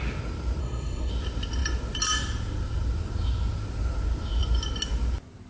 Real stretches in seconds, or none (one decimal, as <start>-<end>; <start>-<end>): 0.0-0.6; 1.1-5.5